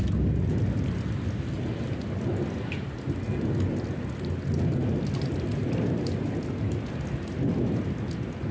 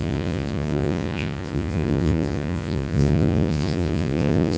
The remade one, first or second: second